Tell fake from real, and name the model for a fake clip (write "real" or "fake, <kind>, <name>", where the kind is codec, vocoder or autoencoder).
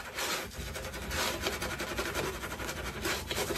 real